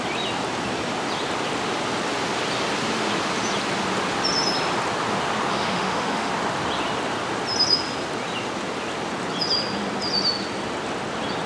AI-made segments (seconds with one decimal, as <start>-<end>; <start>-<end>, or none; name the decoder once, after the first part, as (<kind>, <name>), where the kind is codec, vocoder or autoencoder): 5.5-6.3 (autoencoder, DAC-VAE)